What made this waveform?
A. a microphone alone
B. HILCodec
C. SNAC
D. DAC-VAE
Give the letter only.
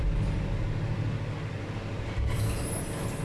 A